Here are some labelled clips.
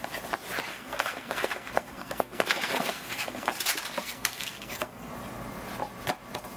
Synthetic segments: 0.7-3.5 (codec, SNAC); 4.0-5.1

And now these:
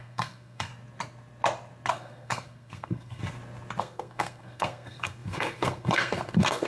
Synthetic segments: 0.0-0.7 (codec, SNAC); 1.9-3.2; 3.8-6.7

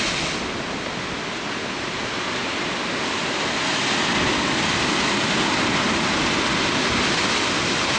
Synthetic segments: none

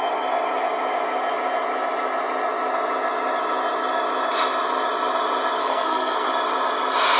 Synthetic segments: 5.6-6.3 (codec, SNAC)